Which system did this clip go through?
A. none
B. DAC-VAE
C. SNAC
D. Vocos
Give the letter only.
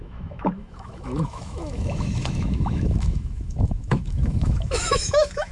B